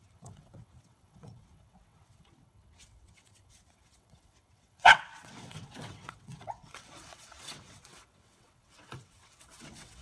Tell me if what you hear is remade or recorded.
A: remade